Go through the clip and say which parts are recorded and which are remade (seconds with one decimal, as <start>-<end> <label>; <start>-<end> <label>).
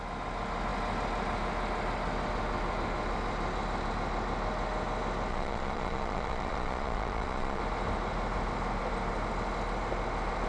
0.0-5.3 recorded; 5.3-7.6 remade; 7.6-10.5 recorded